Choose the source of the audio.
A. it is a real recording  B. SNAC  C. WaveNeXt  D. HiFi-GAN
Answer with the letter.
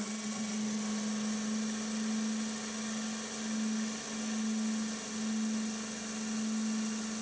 A